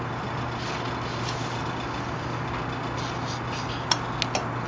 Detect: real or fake real